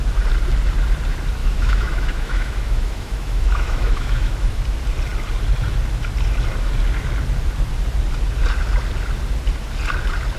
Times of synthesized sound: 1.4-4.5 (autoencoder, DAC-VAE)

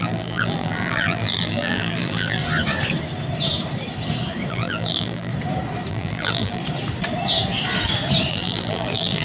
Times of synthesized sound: 0.0-2.4 (vocoder, BigVGAN v2); 4.5-5.3; 5.9-6.6; 8.3-9.2

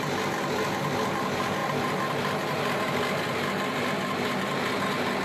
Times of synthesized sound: none

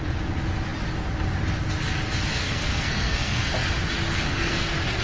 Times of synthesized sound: 2.4-3.5 (codec, SNAC); 4.1-5.0